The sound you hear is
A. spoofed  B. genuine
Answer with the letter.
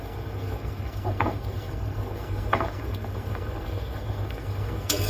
A